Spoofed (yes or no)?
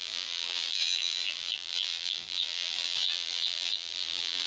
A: yes